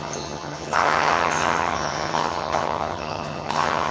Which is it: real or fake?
fake